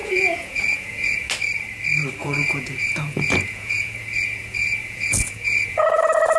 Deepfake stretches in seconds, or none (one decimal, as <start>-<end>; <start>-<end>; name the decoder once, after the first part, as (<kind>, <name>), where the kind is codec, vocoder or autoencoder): 0.0-1.3 (vocoder, Vocos); 2.2-6.0